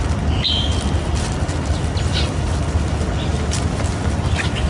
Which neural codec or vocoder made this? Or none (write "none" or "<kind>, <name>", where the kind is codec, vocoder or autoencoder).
none